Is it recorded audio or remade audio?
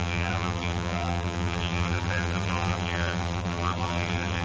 remade